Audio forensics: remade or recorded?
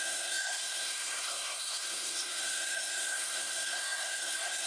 remade